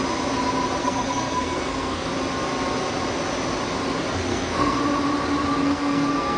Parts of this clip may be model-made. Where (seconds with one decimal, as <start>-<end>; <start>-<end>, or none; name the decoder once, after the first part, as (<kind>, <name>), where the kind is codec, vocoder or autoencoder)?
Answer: 0.8-2.1 (codec, SNAC); 4.3-4.8; 5.6-6.4